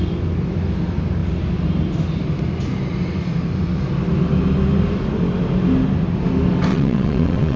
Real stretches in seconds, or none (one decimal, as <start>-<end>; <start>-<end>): 0.0-6.7

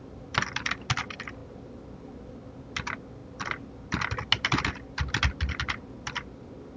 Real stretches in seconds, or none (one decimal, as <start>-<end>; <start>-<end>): 0.0-6.8

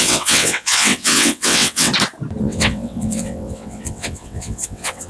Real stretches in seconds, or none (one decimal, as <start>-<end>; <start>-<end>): 1.9-2.4

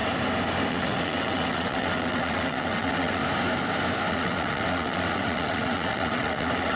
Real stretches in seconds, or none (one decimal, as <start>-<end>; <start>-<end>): 0.0-0.7; 3.2-4.1